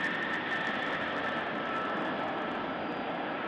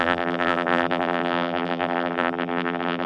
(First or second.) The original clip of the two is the first